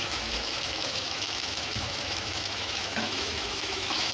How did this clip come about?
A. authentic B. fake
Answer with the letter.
B